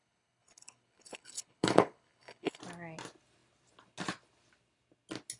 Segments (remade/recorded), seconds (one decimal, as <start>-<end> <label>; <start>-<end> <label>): 0.0-2.6 remade; 2.6-5.4 recorded